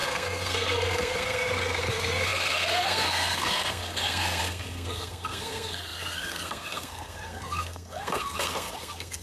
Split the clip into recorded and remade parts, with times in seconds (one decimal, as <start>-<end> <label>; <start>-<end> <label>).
0.0-9.2 remade